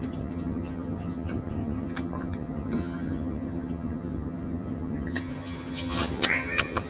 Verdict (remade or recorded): remade